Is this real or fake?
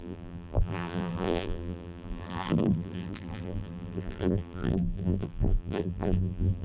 fake